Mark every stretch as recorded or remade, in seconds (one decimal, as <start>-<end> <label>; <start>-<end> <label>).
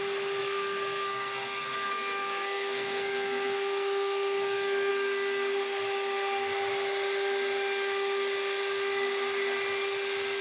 0.0-0.4 recorded; 0.4-4.9 remade; 4.9-10.4 recorded